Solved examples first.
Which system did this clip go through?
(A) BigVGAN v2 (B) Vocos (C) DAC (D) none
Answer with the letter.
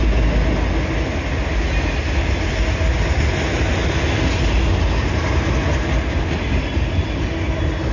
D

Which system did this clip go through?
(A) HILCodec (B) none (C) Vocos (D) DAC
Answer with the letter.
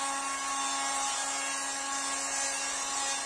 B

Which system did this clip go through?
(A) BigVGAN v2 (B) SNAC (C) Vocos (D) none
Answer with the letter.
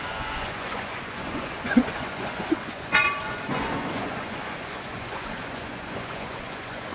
C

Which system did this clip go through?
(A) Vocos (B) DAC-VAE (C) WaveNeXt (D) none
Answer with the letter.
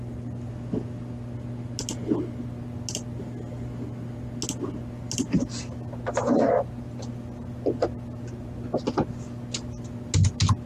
D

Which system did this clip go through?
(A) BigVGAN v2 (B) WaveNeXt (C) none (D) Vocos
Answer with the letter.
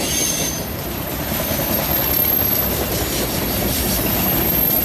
C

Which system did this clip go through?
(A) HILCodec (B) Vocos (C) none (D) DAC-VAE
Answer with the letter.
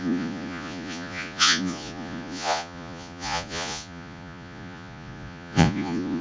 B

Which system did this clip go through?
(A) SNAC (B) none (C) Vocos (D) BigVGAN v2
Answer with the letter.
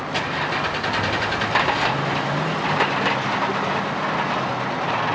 B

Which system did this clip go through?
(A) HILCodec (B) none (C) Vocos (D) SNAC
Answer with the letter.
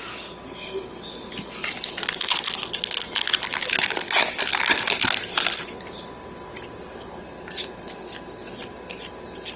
B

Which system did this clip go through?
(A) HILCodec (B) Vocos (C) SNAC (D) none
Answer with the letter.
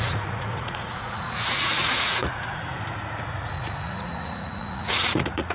B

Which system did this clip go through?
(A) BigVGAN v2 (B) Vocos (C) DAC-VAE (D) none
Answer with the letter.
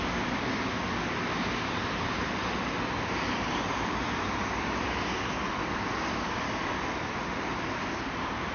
D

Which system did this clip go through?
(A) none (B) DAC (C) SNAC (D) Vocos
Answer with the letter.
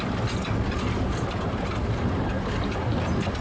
A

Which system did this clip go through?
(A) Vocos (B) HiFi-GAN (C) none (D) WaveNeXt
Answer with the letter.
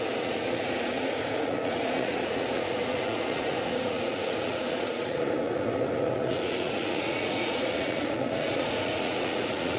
A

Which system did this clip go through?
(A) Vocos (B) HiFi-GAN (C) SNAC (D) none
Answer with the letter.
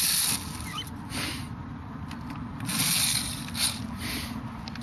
D